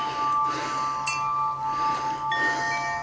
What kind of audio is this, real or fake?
real